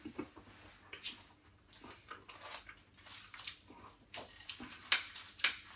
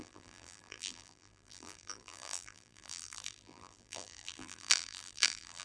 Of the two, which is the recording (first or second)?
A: first